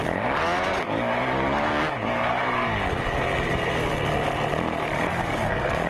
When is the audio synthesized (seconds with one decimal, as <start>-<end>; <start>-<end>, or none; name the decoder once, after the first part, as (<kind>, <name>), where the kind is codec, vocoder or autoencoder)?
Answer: 0.7-3.7 (codec, DAC); 5.1-5.9